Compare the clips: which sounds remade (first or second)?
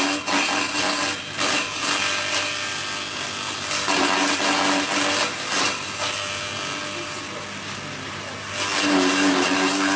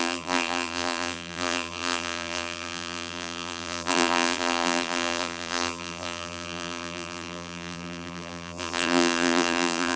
second